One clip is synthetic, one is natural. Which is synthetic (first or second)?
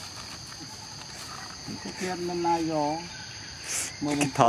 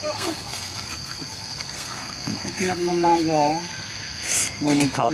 second